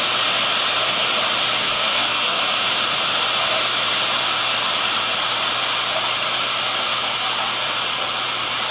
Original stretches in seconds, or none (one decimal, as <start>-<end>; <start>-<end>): 0.0-1.6; 2.4-8.7